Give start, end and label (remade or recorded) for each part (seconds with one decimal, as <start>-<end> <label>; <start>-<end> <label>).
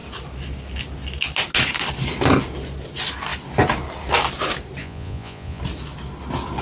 0.0-4.8 recorded; 4.8-5.6 remade; 5.6-6.6 recorded